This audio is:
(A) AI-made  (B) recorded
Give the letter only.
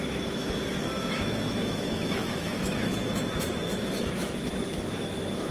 A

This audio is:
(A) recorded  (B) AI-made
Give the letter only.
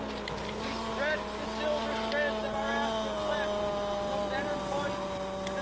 A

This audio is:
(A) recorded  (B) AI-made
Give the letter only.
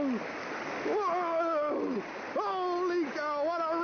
A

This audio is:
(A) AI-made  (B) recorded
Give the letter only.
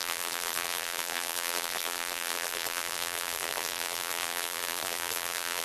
A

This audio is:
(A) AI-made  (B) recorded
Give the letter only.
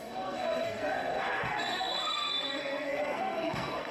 A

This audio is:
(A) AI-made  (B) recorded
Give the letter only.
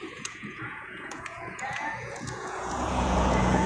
A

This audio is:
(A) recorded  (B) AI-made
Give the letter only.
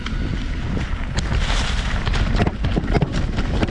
A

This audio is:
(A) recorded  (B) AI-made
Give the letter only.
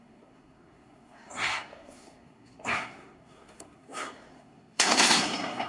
B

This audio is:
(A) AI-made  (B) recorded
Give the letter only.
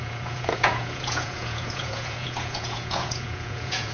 A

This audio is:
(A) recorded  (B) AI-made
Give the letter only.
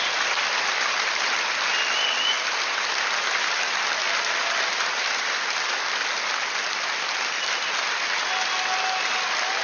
A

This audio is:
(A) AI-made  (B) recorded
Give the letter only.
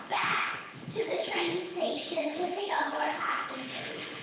A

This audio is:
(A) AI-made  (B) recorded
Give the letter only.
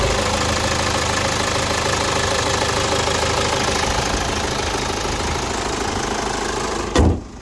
B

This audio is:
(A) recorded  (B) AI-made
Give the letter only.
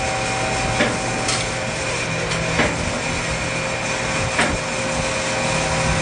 A